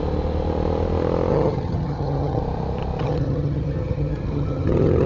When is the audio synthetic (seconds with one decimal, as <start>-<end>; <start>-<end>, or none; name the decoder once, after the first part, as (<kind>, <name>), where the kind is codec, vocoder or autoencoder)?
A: 1.3-2.4 (vocoder, HiFi-GAN); 3.0-5.1